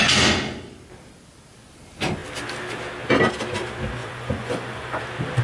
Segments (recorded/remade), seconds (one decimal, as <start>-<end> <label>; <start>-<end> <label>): 0.0-4.0 recorded; 4.0-5.0 remade; 5.0-5.4 recorded